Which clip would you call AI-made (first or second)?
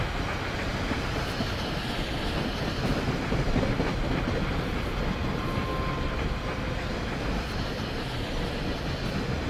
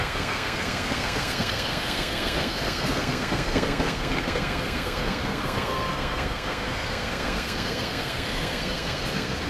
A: second